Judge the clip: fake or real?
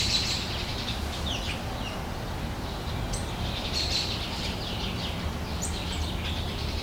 real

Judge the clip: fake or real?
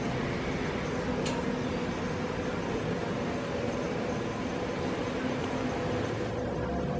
real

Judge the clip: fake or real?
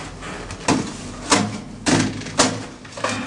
real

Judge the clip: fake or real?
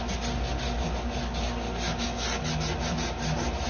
real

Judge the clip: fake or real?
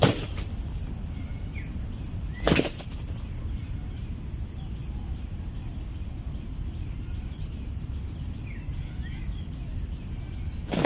real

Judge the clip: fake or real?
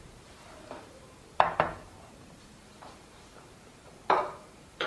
fake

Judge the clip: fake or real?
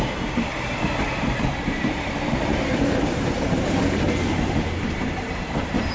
fake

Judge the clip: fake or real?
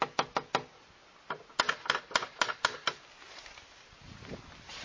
real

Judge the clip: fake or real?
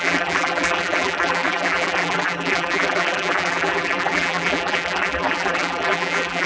fake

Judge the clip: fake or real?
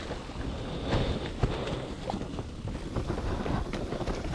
real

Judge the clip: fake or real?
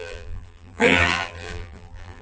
fake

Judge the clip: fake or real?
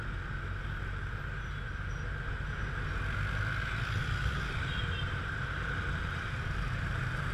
real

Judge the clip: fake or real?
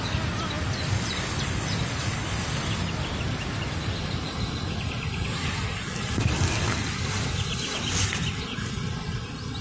real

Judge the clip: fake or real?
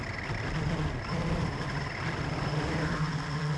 fake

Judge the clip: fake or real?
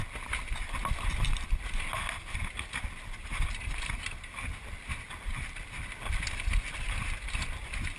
real